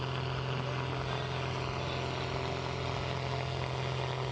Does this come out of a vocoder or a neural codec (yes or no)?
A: no